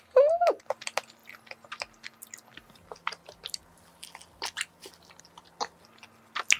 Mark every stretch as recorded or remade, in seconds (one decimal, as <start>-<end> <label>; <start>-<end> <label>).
0.0-6.6 recorded